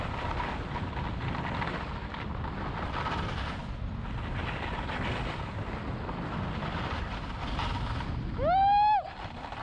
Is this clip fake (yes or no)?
no